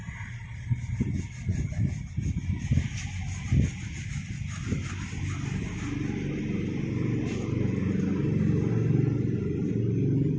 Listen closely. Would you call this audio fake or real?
real